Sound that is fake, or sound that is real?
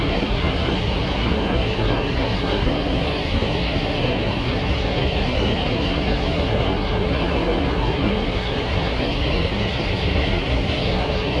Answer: fake